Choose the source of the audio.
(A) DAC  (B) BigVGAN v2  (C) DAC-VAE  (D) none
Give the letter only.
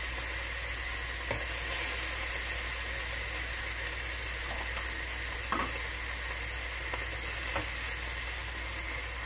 D